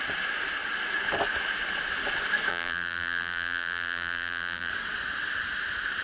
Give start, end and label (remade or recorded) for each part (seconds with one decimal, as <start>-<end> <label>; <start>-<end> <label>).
0.0-2.5 recorded; 2.5-4.7 remade; 4.7-6.0 recorded